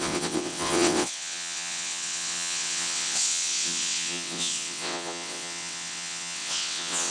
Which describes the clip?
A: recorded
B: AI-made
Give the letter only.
B